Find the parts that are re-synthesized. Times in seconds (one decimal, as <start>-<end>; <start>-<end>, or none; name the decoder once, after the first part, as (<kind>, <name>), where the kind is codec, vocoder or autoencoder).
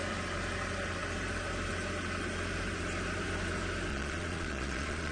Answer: 3.9-5.1 (vocoder, Vocos)